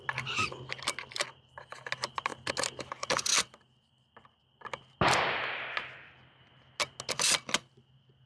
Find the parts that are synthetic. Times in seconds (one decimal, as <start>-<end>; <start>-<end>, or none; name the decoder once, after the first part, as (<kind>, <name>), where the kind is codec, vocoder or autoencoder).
none